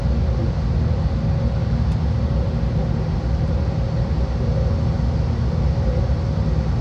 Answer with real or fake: real